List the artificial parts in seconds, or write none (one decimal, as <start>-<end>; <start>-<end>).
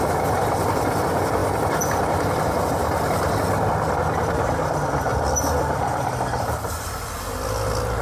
5.1-7.0